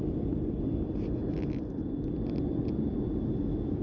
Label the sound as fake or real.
fake